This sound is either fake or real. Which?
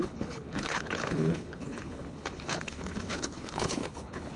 fake